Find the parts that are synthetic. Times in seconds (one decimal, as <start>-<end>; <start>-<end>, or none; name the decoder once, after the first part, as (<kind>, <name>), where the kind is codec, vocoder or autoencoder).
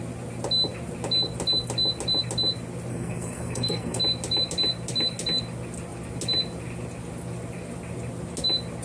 2.9-4.0 (codec, SNAC)